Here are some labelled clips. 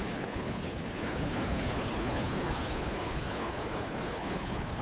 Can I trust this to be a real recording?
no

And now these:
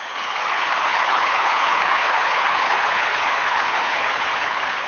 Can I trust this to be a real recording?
no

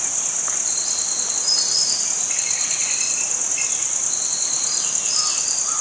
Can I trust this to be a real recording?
yes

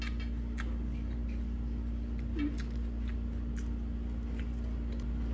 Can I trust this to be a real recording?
yes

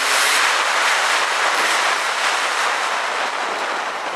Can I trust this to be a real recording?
yes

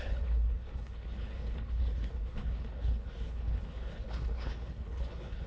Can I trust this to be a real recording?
no